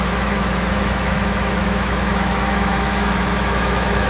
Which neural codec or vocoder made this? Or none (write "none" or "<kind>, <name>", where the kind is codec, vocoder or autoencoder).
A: autoencoder, DAC-VAE